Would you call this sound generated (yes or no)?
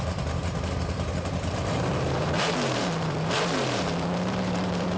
yes